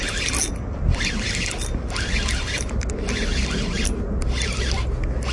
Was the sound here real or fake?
real